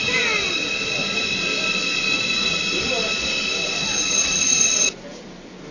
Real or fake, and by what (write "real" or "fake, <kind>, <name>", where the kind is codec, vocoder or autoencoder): real